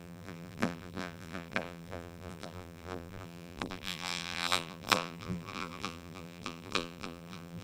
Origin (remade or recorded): remade